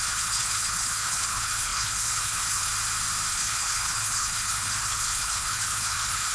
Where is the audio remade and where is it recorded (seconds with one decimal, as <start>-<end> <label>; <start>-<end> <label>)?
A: 0.0-2.7 remade; 2.7-3.3 recorded; 3.3-6.3 remade